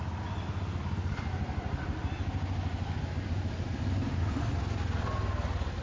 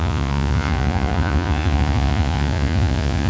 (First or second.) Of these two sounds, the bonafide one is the first